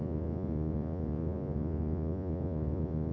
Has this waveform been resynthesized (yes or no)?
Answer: yes